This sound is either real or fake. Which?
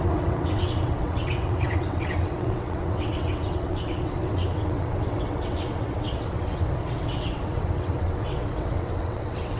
fake